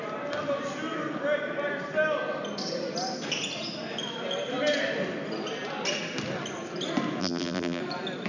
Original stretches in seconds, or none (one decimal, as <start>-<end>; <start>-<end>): 0.0-7.2; 7.8-8.3